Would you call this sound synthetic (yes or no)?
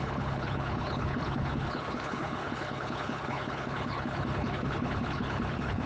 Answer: yes